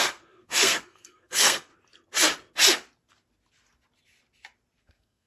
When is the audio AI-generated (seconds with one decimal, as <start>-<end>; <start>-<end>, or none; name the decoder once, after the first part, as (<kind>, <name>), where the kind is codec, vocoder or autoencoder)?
0.0-1.7 (codec, SNAC); 4.8-5.3